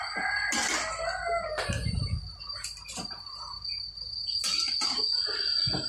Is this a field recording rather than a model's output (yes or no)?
yes